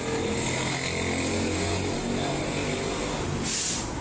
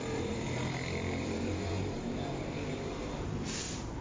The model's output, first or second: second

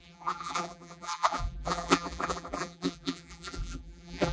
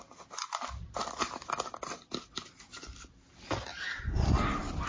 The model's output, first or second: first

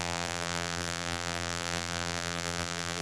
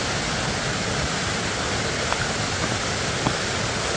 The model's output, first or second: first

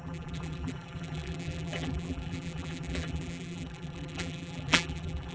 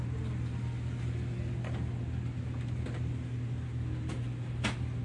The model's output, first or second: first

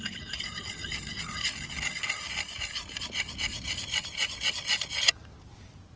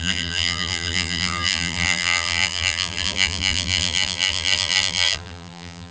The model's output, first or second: second